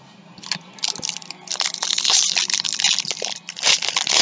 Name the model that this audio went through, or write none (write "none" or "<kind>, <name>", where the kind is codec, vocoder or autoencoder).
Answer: none